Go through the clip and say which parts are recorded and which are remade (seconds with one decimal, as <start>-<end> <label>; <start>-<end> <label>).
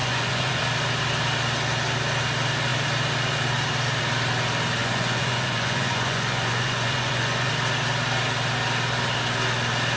0.0-0.6 remade; 0.6-4.8 recorded; 4.8-7.5 remade; 7.5-10.0 recorded